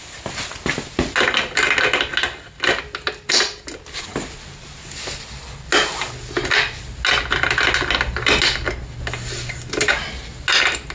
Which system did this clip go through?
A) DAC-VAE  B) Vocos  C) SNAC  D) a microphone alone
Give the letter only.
D